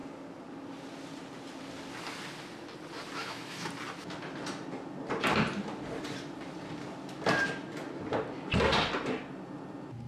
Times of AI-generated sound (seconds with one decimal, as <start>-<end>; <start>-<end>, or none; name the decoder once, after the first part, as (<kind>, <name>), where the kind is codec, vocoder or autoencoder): 3.2-3.7 (autoencoder, DAC-VAE)